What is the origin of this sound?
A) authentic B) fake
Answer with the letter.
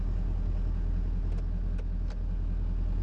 A